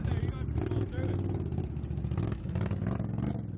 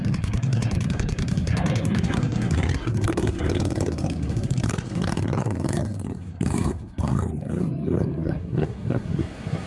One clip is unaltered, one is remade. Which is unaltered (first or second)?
first